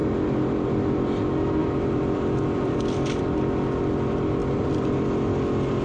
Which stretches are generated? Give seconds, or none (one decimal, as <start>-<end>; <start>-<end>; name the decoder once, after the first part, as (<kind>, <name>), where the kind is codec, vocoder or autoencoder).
0.0-0.9 (vocoder, BigVGAN v2); 1.6-3.2; 4.4-4.9